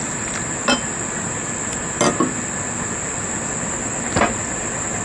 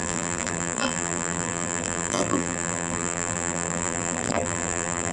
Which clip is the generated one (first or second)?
second